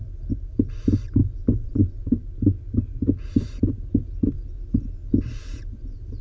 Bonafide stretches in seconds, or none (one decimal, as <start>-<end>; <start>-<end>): 0.0-6.2